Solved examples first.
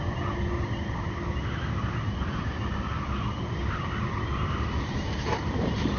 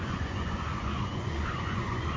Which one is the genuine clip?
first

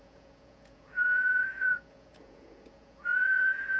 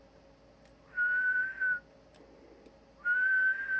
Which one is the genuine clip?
second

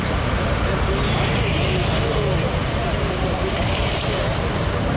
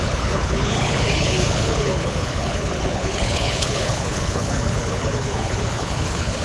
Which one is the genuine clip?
first